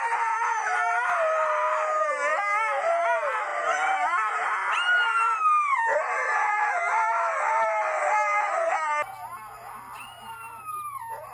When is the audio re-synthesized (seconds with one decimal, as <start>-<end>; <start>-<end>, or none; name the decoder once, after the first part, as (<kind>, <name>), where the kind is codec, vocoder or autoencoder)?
3.5-4.4 (vocoder, BigVGAN v2)